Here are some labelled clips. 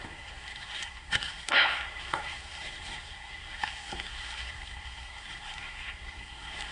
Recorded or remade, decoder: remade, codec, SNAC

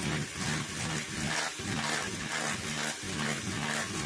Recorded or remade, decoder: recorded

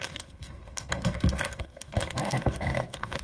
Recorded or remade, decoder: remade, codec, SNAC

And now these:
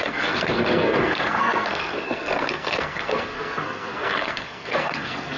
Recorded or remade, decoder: remade, codec, SNAC